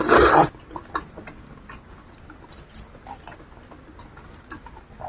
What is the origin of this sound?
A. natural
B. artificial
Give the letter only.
A